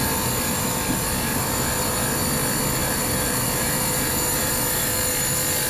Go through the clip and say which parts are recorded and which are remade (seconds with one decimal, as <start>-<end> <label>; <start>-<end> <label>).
0.0-2.8 recorded; 2.8-4.5 remade; 4.5-5.7 recorded